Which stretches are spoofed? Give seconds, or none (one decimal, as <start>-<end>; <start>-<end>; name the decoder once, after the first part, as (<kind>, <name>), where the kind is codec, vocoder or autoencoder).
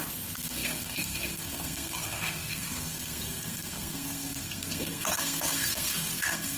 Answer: 0.0-6.6 (codec, SNAC)